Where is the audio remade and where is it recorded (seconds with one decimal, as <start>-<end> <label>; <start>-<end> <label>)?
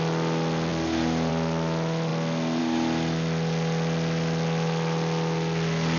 0.0-6.0 recorded